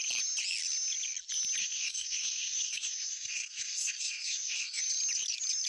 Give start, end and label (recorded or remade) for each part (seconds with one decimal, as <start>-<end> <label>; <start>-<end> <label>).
0.0-1.6 recorded; 1.6-4.8 remade; 4.8-5.7 recorded

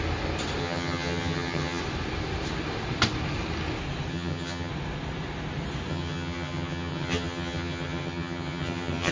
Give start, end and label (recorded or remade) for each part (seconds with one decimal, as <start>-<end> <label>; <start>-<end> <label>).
0.0-0.6 recorded; 0.6-1.8 remade; 1.8-4.1 recorded; 4.1-4.7 remade; 4.7-5.9 recorded; 5.9-9.1 remade

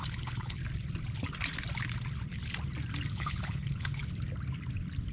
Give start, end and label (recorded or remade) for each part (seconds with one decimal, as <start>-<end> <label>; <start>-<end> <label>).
0.0-0.6 remade; 0.6-3.1 recorded; 3.1-4.0 remade; 4.0-5.1 recorded

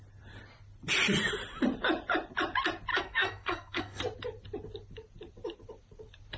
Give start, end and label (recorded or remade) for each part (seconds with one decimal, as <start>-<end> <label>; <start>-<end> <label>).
0.0-2.9 recorded; 2.9-4.0 remade; 4.0-6.4 recorded

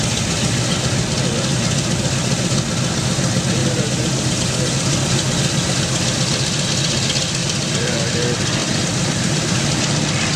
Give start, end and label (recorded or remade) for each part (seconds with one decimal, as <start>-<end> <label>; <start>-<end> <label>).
0.0-3.6 recorded; 3.6-4.4 remade; 4.4-7.4 recorded; 7.4-8.1 remade; 8.1-8.6 recorded; 8.6-9.6 remade; 9.6-10.4 recorded

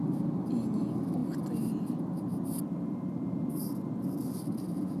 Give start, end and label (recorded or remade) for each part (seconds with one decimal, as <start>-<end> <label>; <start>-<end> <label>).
0.0-5.0 recorded

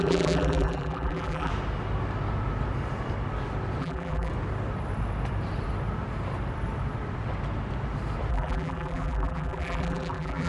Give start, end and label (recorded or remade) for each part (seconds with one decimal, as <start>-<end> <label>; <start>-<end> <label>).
0.0-1.5 remade; 1.5-3.8 recorded; 3.8-4.3 remade; 4.3-8.3 recorded; 8.3-10.5 remade

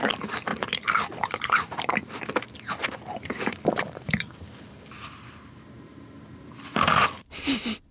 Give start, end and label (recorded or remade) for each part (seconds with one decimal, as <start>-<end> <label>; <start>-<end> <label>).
0.0-0.5 recorded; 0.5-2.2 remade; 2.2-2.8 recorded; 2.8-6.9 remade; 6.9-7.9 recorded